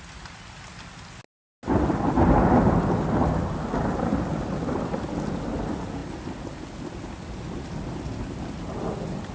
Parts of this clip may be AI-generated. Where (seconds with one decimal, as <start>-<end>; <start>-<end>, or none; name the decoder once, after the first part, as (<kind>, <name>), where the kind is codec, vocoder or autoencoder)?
none